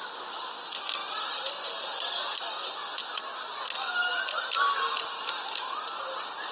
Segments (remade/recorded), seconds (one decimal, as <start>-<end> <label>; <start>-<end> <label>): 0.0-6.5 recorded